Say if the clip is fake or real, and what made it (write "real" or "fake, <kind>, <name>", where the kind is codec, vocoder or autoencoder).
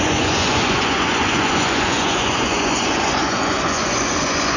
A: fake, vocoder, Vocos